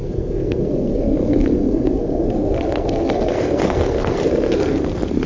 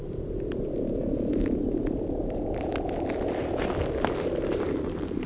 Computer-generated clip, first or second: first